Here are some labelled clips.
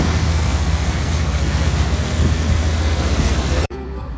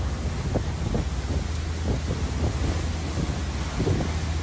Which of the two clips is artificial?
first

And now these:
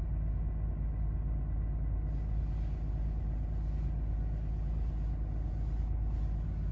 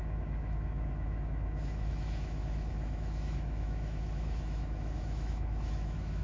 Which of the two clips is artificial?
second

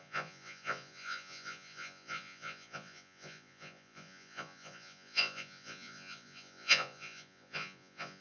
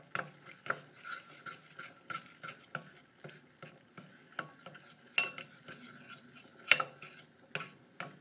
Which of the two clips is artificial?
first